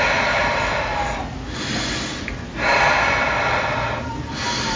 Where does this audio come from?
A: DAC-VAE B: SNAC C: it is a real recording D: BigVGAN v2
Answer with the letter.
C